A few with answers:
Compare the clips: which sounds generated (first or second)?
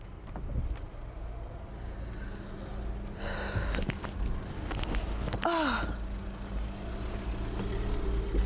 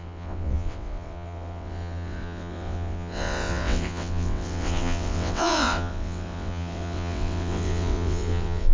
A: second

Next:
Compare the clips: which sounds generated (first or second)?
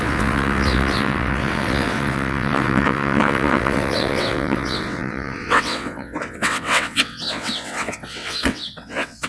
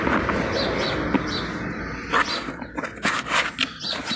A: first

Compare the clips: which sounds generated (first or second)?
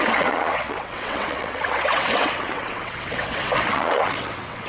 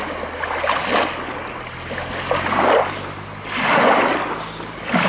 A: first